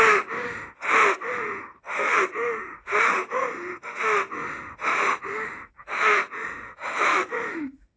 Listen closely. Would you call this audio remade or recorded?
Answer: remade